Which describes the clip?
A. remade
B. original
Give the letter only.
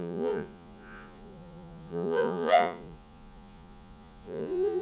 A